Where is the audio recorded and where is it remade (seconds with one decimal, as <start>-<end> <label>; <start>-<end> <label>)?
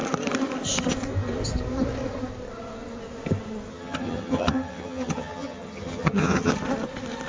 0.0-3.7 recorded; 3.7-6.5 remade; 6.5-7.3 recorded